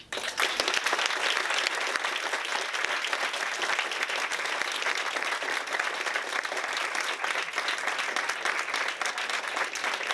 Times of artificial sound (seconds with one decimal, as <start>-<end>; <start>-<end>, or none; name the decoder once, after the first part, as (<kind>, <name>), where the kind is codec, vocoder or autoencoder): none